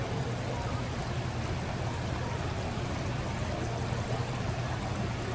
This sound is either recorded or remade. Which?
recorded